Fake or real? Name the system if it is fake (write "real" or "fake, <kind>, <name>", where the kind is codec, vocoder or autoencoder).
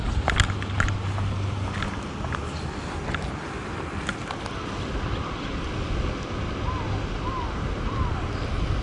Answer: real